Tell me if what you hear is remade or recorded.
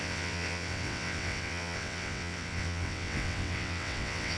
remade